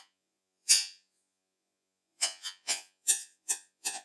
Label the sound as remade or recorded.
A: remade